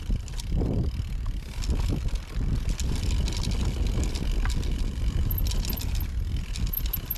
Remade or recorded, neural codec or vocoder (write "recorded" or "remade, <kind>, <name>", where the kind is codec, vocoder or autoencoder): recorded